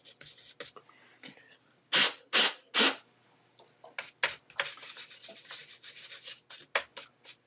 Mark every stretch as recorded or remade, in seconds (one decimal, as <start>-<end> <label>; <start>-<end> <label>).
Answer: 0.0-7.5 recorded